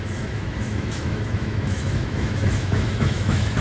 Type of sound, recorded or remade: remade